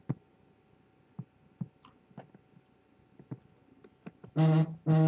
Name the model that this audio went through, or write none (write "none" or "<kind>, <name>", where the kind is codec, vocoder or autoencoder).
none